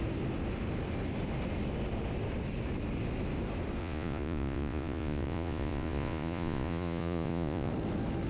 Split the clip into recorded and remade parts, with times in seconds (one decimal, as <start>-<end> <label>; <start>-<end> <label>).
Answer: 0.0-3.8 recorded; 3.8-7.7 remade; 7.7-8.3 recorded